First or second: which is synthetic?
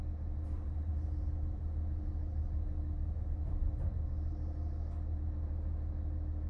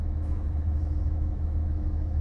second